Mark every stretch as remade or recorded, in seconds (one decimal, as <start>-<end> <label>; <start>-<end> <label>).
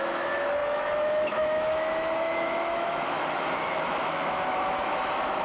0.0-5.4 remade